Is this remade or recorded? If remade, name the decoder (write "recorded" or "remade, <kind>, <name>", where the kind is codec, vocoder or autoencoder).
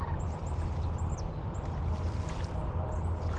recorded